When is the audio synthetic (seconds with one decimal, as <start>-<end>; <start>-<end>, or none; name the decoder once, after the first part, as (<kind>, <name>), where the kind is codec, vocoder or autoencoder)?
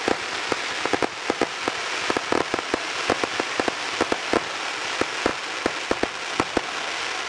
none